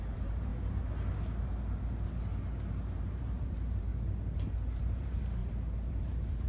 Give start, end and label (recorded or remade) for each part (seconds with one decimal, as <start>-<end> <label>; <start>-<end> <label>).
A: 0.0-0.5 remade; 0.5-2.9 recorded; 2.9-3.9 remade; 3.9-4.8 recorded; 4.8-5.4 remade; 5.4-5.9 recorded; 5.9-6.5 remade